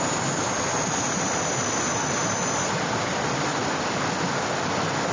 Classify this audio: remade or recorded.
recorded